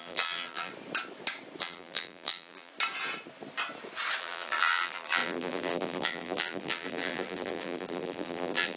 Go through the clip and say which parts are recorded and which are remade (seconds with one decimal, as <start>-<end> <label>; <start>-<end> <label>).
0.0-0.7 remade; 0.7-1.6 recorded; 1.6-2.7 remade; 2.7-4.2 recorded; 4.2-8.8 remade